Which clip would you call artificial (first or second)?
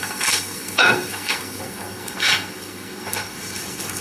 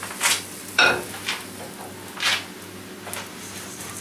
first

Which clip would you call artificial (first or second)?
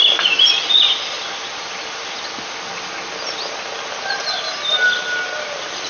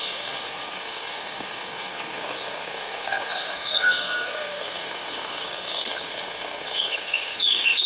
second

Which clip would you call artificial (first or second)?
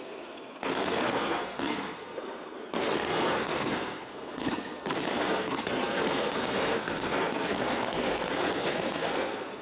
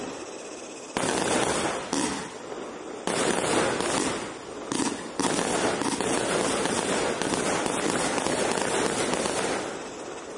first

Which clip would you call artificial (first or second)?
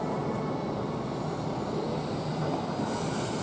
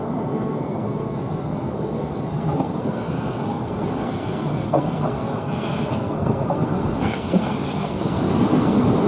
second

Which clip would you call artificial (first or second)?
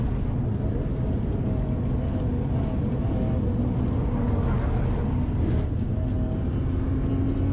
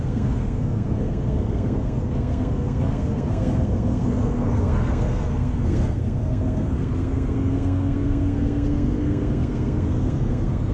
second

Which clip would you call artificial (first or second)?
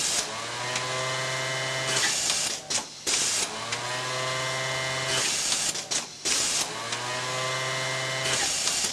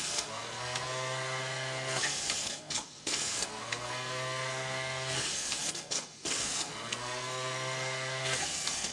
second